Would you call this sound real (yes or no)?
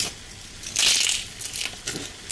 yes